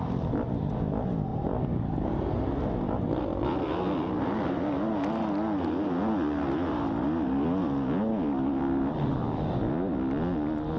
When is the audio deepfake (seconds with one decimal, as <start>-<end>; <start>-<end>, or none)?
1.3-2.8